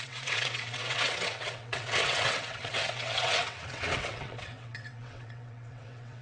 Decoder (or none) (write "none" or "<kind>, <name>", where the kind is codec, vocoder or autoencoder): vocoder, WaveNeXt